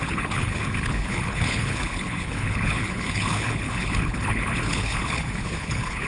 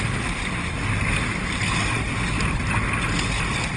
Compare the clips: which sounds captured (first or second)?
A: second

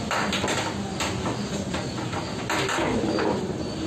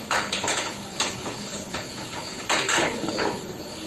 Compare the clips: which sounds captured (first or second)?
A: first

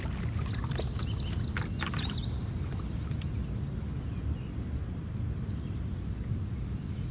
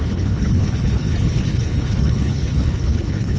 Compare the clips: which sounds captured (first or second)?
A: first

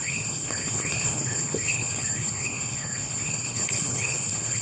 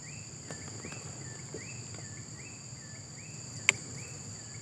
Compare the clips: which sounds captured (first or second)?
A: second